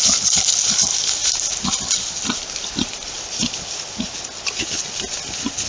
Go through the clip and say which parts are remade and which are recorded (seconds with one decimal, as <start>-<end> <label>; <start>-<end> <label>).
0.0-5.7 recorded

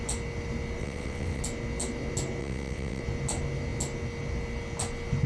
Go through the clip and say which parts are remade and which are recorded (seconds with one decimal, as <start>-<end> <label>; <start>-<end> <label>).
0.0-0.8 recorded; 0.8-1.4 remade; 1.4-2.4 recorded; 2.4-3.0 remade; 3.0-5.3 recorded

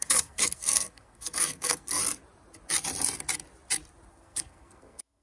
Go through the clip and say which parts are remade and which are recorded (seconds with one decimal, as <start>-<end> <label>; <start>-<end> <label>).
0.0-2.0 remade; 2.0-4.1 recorded; 4.1-5.2 remade